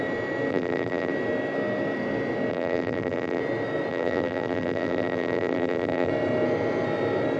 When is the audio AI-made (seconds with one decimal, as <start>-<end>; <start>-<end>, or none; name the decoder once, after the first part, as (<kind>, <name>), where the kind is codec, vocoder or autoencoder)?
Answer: 0.5-1.1 (vocoder, BigVGAN v2); 2.5-3.4; 3.9-6.1